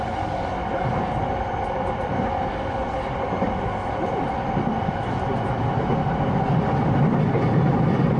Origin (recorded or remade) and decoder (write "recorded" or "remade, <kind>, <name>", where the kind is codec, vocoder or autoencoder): recorded